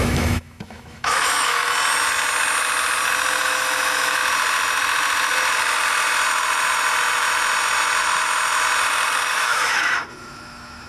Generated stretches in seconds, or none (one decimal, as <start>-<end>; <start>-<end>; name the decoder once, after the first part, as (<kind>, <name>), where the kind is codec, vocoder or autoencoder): 0.0-1.6 (autoencoder, DAC-VAE); 3.4-4.2; 9.3-10.9